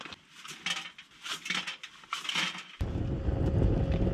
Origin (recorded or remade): recorded